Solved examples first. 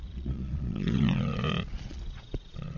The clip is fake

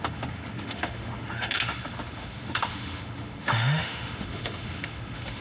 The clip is fake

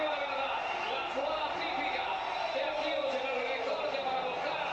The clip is real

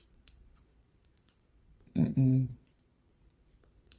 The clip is fake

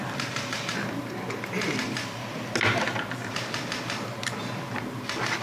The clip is real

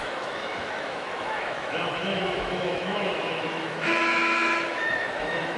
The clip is fake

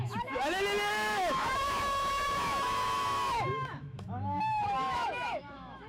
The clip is fake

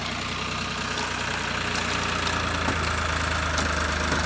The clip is real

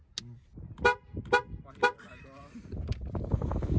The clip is real